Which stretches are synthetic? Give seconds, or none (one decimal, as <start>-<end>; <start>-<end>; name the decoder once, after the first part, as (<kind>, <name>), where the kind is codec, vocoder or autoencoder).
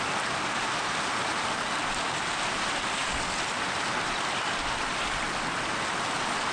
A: none